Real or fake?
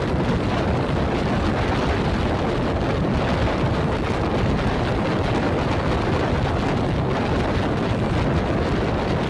real